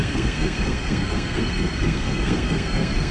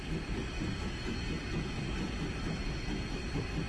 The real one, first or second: second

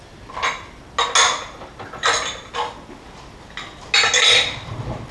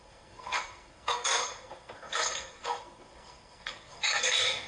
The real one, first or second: first